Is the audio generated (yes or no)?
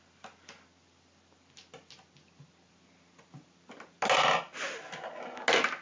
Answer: no